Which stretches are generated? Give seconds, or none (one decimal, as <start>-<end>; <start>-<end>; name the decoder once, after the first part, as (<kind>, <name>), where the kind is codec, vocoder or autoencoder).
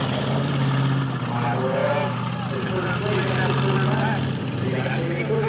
none